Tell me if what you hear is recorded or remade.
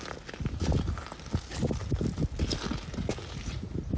recorded